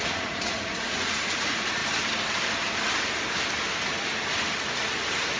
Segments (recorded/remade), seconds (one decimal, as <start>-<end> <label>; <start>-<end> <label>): 0.0-1.8 remade; 1.8-4.6 recorded; 4.6-5.4 remade